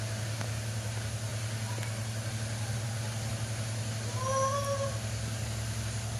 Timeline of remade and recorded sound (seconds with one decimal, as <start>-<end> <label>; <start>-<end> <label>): 0.0-6.2 recorded